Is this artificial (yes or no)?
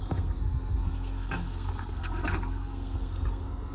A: yes